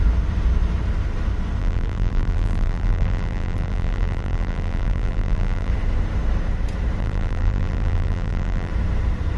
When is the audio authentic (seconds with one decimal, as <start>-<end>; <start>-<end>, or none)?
0.0-1.6; 5.7-7.0; 8.7-9.4